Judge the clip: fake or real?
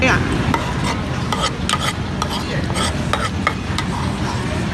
real